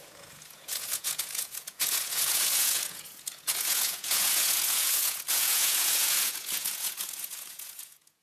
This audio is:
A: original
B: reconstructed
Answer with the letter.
B